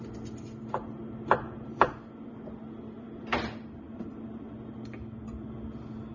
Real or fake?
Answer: real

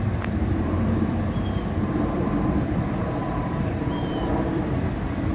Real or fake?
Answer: fake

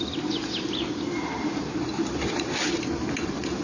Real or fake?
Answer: fake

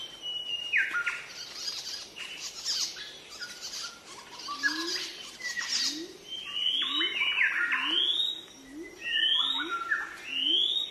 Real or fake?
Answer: real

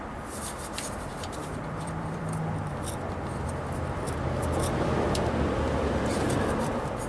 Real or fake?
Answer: fake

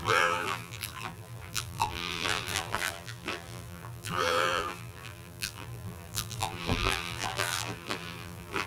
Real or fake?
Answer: fake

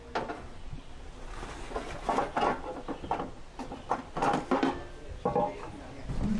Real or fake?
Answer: real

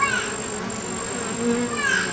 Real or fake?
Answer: real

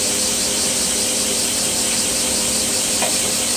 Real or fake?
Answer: fake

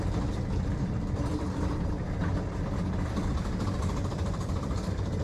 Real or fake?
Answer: fake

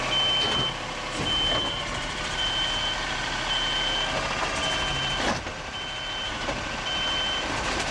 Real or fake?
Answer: real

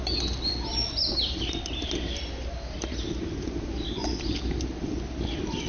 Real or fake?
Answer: real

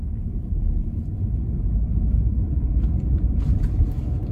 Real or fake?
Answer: fake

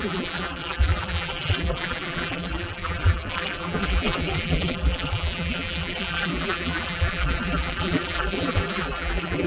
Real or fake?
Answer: fake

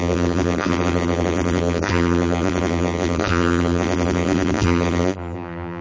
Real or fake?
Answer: fake